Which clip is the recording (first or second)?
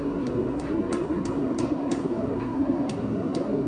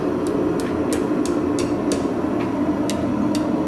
second